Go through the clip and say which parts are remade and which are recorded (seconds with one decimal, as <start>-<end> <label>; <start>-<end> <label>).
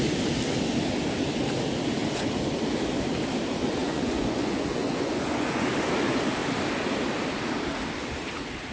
0.0-3.8 recorded; 3.8-5.7 remade; 5.7-8.7 recorded